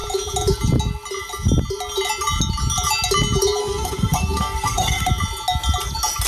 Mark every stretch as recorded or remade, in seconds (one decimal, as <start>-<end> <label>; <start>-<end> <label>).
0.0-3.6 recorded; 3.6-5.1 remade; 5.1-6.3 recorded